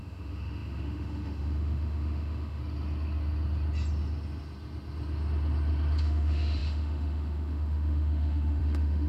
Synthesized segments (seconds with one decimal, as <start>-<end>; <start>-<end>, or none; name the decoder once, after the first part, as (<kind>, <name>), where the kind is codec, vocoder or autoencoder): 0.0-2.6 (autoencoder, DAC-VAE); 6.0-9.1

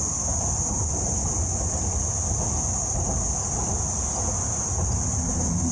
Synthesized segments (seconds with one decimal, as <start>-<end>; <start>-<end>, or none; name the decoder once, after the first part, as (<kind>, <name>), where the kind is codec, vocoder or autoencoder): none

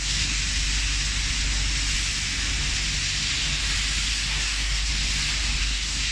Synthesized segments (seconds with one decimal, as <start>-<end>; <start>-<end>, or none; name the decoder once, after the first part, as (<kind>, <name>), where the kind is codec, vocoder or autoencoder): 0.0-0.4 (codec, SNAC); 4.1-4.9; 5.6-6.1

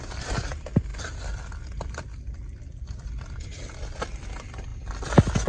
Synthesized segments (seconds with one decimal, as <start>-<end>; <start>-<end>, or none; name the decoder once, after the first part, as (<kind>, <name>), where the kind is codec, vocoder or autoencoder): none